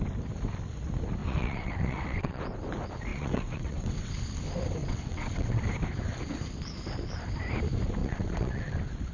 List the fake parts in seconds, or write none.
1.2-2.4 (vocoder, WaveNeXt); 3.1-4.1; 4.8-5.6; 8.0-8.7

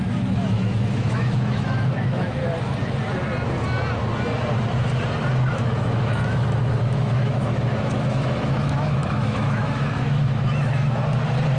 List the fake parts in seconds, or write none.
0.0-2.4 (autoencoder, DAC-VAE); 5.5-11.0

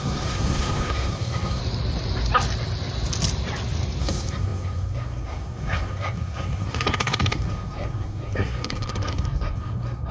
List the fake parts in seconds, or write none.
0.0-1.6 (codec, SNAC); 4.0-10.1

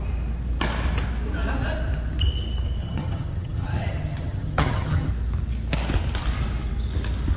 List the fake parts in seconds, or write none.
2.8-5.1 (vocoder, HiFi-GAN)